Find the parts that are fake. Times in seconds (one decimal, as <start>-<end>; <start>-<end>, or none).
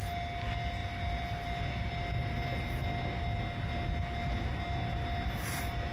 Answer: none